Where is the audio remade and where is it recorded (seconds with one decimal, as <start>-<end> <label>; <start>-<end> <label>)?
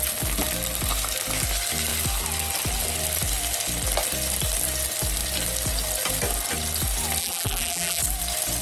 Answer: 0.0-7.2 recorded; 7.2-8.0 remade; 8.0-8.6 recorded